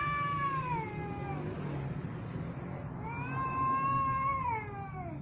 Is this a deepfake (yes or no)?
no